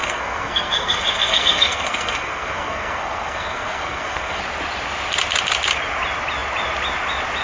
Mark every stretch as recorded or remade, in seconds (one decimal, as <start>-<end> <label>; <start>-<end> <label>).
0.0-4.4 remade; 4.4-7.4 recorded